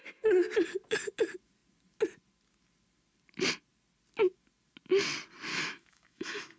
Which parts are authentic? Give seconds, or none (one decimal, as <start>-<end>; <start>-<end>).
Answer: 0.0-5.5